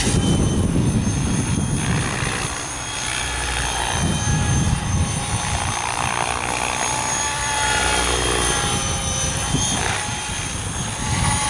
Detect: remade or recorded remade